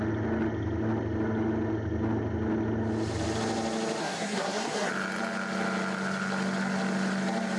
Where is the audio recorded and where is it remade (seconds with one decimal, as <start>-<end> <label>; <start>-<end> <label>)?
0.0-4.0 recorded; 4.0-4.9 remade; 4.9-7.6 recorded